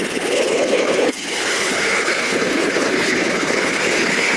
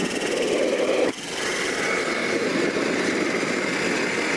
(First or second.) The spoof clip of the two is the first